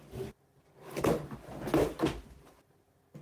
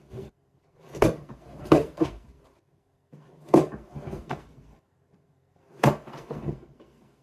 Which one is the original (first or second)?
first